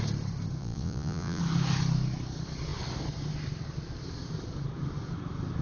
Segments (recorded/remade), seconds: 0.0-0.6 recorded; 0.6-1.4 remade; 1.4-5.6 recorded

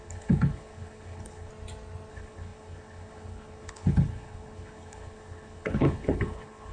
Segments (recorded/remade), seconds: 0.0-1.5 remade; 1.5-2.1 recorded; 2.1-6.7 remade

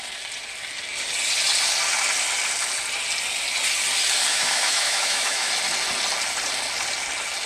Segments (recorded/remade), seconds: 0.0-4.3 recorded; 4.3-5.5 remade; 5.5-7.5 recorded

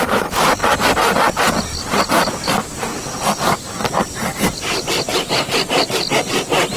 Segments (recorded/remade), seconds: 0.0-0.6 remade; 0.6-1.2 recorded; 1.2-6.8 remade